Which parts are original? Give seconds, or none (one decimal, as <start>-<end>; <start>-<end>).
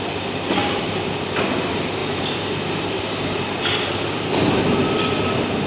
0.0-0.6; 1.2-2.0; 4.6-5.7